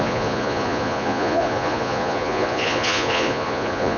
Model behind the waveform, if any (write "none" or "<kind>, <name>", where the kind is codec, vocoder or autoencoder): vocoder, Vocos